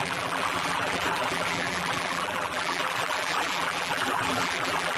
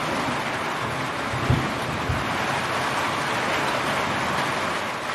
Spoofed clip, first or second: first